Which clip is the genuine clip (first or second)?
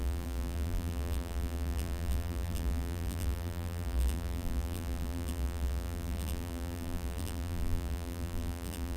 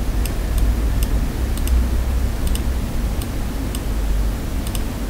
second